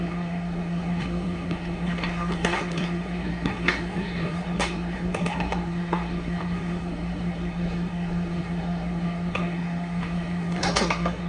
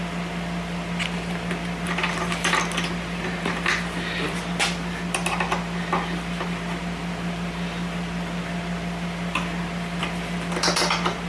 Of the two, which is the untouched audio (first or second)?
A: second